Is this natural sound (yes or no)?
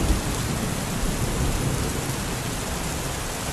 yes